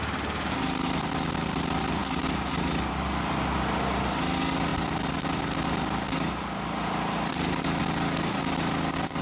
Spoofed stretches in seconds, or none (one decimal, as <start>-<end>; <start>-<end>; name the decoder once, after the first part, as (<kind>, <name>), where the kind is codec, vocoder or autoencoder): none